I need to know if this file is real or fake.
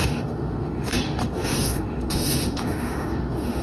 fake